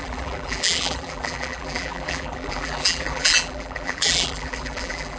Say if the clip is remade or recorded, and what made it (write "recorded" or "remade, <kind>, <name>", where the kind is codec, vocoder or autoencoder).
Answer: remade, vocoder, BigVGAN v2